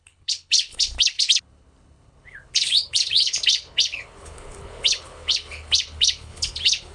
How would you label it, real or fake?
fake